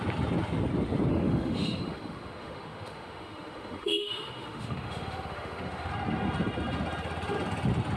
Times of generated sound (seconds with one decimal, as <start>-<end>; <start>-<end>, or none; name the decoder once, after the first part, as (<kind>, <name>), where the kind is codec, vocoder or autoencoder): 1.1-5.9 (autoencoder, DAC-VAE)